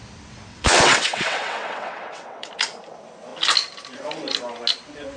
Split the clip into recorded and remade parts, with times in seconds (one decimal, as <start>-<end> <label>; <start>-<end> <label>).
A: 0.0-0.5 recorded; 0.5-2.5 remade; 2.5-5.2 recorded